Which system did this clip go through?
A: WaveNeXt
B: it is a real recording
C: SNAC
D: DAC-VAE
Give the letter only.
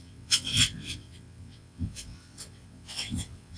A